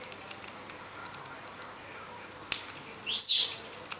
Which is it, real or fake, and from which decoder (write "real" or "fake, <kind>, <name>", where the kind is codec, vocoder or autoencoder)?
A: real